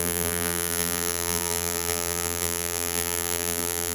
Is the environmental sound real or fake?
fake